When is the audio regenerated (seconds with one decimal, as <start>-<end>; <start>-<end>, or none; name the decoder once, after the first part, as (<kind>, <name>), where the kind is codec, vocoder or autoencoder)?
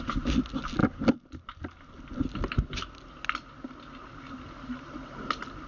none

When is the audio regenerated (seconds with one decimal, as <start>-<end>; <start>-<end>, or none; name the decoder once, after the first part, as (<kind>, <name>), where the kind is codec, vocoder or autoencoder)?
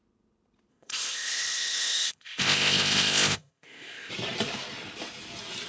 0.7-4.1 (codec, ZipCodec)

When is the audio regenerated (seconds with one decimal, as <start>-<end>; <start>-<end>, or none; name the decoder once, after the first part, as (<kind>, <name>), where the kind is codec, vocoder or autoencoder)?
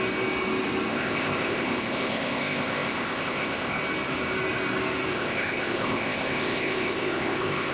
0.9-3.8 (codec, ZipCodec); 5.1-7.7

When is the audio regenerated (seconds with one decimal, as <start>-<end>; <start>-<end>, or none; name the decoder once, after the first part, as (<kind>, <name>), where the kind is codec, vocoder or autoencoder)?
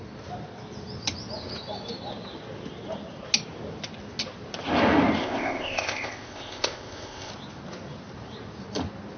5.2-7.3 (codec, ZipCodec)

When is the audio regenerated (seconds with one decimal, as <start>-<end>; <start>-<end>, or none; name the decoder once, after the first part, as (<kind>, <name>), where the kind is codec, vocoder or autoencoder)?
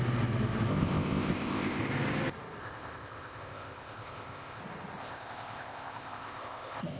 0.7-1.8 (codec, ZipCodec); 2.6-4.6; 5.0-7.0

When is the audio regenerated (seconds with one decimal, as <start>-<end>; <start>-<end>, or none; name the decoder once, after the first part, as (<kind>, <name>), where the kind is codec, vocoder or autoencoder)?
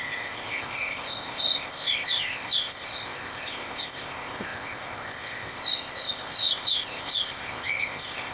0.0-8.3 (codec, ZipCodec)